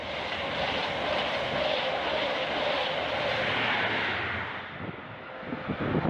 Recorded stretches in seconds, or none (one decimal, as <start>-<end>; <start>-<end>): 0.0-6.1